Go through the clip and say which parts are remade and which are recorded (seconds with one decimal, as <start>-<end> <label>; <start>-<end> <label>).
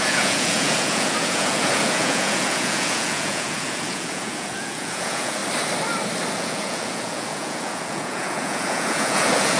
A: 0.0-5.4 remade; 5.4-6.3 recorded; 6.3-9.6 remade